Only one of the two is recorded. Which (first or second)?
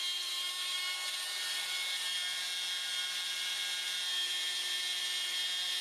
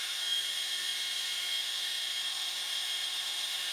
first